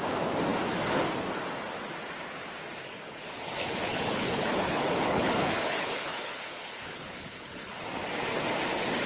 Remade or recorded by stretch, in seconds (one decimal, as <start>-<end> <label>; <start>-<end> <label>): 0.0-2.8 recorded; 2.8-7.8 remade; 7.8-9.1 recorded